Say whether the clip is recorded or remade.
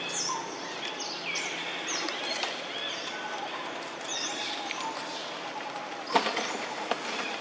recorded